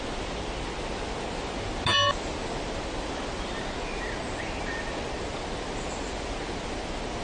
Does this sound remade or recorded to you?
recorded